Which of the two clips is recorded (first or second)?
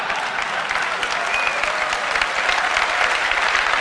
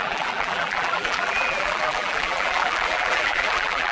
first